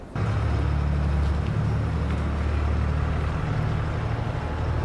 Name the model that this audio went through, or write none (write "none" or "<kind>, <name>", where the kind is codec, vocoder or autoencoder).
none